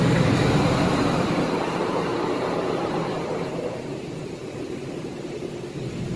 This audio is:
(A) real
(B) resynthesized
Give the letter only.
B